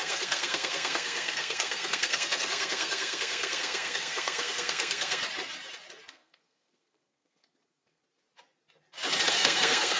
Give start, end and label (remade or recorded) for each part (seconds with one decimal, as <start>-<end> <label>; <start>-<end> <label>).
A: 0.0-5.2 remade; 5.2-6.1 recorded; 6.1-8.0 remade; 8.0-9.3 recorded; 9.3-10.0 remade